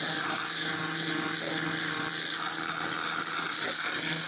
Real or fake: real